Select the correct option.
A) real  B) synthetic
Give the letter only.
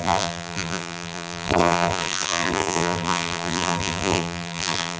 B